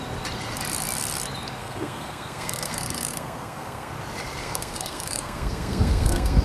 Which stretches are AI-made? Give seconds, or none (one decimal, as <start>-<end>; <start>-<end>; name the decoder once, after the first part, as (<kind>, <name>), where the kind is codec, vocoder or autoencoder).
1.6-3.9 (codec, SNAC); 4.4-6.4